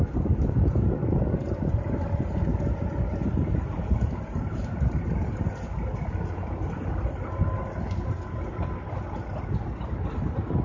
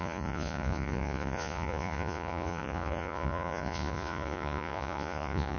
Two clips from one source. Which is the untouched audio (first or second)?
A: first